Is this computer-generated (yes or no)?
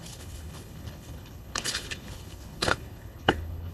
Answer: yes